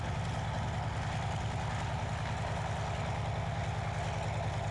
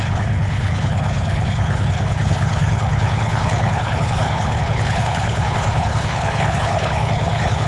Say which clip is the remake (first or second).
second